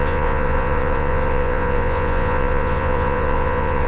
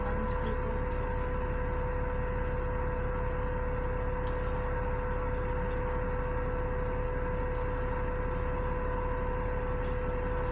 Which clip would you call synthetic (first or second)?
first